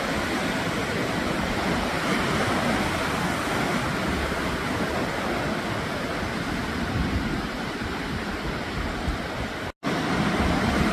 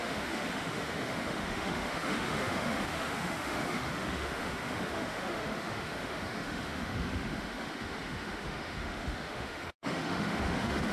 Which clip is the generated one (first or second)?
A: second